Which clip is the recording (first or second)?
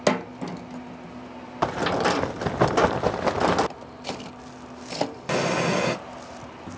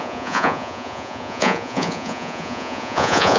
first